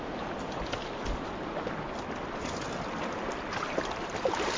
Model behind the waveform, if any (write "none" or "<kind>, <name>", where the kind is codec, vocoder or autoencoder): none